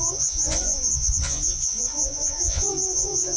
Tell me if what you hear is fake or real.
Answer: fake